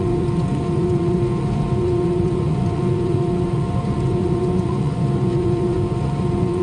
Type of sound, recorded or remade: remade